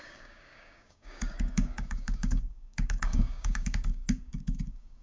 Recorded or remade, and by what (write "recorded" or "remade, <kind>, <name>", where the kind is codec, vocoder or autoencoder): remade, codec, DAC